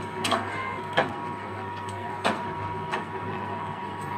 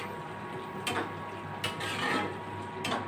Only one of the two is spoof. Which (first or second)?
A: first